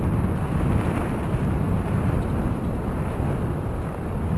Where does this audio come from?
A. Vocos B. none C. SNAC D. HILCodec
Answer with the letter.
B